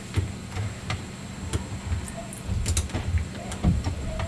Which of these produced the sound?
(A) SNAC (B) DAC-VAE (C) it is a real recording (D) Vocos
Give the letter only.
C